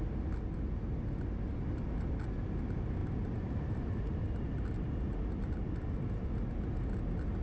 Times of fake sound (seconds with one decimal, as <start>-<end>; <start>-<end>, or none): 3.0-4.2